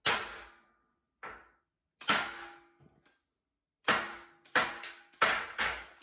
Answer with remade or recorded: recorded